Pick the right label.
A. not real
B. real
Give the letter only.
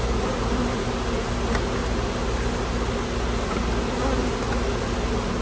B